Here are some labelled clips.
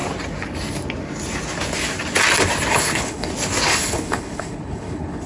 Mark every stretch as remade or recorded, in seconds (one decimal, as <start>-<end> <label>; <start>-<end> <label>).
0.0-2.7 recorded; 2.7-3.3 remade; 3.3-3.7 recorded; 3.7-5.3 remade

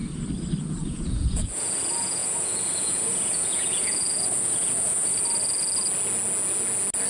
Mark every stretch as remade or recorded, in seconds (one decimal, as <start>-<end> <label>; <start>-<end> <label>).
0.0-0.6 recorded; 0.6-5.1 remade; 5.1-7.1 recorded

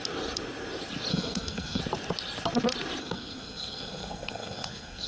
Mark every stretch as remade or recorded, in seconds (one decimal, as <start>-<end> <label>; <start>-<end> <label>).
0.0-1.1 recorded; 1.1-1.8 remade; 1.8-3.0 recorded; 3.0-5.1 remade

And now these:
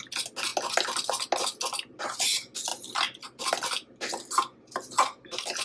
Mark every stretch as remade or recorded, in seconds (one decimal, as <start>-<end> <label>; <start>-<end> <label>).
0.0-5.6 recorded

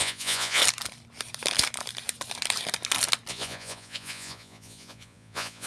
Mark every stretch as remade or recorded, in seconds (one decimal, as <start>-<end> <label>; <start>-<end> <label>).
0.0-0.6 remade; 0.6-3.3 recorded; 3.3-5.7 remade

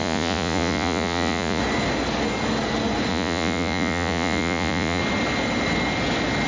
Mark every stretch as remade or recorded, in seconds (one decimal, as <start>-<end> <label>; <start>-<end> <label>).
0.0-1.6 remade; 1.6-3.1 recorded; 3.1-5.0 remade; 5.0-6.5 recorded